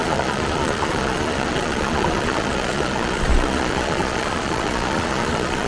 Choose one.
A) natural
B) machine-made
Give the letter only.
B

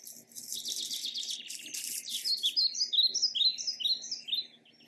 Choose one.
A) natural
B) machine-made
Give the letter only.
A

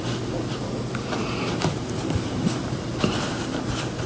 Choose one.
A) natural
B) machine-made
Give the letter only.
A